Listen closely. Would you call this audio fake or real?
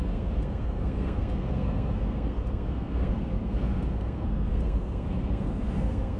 fake